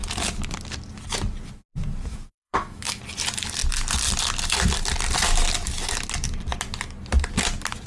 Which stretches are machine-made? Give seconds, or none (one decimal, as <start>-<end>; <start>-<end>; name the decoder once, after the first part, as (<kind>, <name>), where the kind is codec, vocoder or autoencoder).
2.1-3.0 (autoencoder, DAC-VAE)